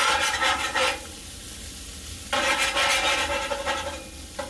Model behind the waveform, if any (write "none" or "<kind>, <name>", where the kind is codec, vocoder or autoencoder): none